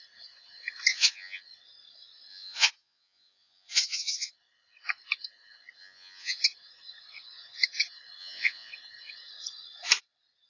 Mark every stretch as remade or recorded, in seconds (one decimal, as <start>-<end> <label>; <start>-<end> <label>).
0.0-0.9 recorded; 0.9-1.4 remade; 1.4-2.3 recorded; 2.3-4.3 remade; 4.3-5.8 recorded; 5.8-6.4 remade; 6.4-8.2 recorded; 8.2-8.7 remade; 8.7-10.5 recorded